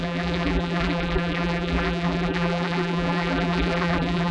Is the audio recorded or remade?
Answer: remade